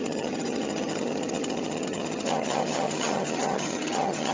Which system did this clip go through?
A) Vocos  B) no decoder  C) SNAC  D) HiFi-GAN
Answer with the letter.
D